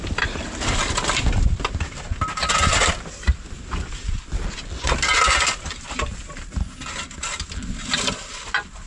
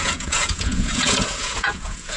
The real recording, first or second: first